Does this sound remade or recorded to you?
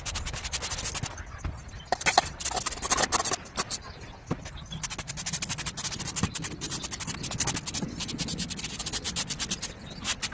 recorded